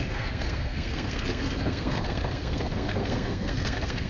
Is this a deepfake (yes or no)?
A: yes